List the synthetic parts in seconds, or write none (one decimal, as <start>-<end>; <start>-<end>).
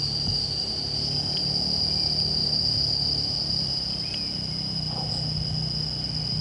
none